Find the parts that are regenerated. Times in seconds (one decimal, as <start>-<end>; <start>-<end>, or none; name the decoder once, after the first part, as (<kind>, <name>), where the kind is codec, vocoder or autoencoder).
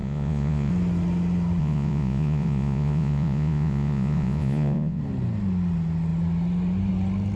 0.0-0.7 (vocoder, Vocos); 1.6-5.0